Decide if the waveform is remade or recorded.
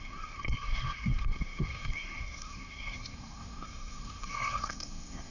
remade